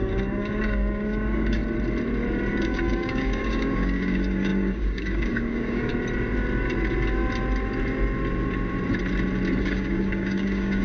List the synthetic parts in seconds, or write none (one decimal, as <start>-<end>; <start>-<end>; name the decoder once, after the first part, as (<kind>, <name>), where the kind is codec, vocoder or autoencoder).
0.0-1.6 (codec, DAC); 2.5-5.9; 9.6-10.8